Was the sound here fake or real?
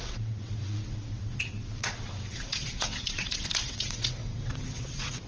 fake